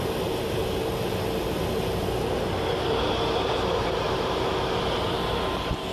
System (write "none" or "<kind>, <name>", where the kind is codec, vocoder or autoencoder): none